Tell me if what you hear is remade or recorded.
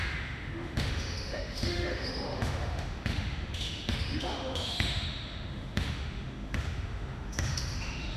remade